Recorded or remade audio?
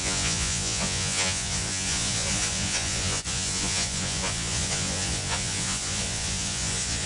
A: remade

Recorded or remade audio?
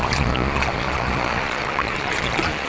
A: remade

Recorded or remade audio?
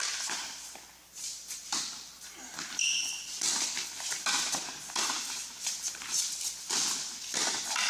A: recorded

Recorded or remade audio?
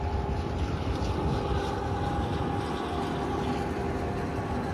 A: recorded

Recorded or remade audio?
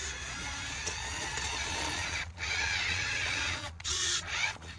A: remade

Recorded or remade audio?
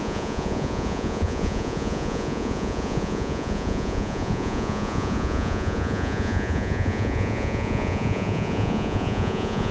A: remade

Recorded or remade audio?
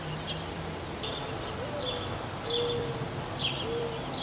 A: recorded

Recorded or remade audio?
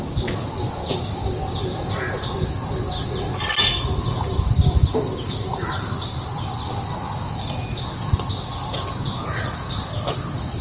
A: recorded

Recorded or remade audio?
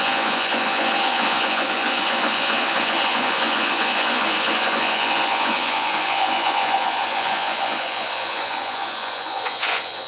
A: remade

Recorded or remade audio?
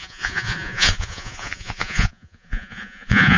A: remade